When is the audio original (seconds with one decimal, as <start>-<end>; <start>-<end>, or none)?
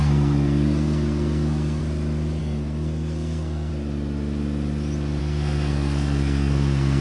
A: 1.8-2.4; 3.7-5.2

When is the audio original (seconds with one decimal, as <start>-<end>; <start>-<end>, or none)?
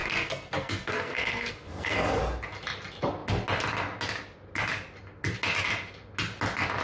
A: 2.2-6.8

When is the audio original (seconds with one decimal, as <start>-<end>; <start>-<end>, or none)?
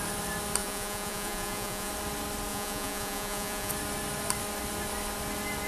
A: 0.0-0.6; 1.9-2.5; 3.7-5.7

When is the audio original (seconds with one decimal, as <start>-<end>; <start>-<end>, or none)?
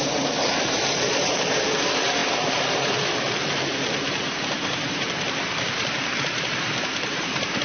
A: none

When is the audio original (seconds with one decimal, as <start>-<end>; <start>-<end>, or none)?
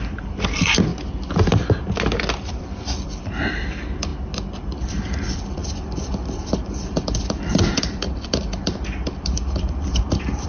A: 0.9-2.5; 4.1-4.6